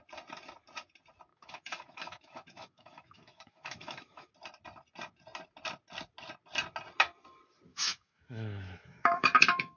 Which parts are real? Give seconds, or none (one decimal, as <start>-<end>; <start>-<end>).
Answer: 0.0-1.3; 4.3-7.7